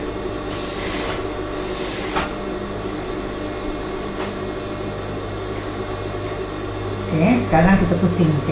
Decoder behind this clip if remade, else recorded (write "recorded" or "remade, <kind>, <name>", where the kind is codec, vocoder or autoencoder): recorded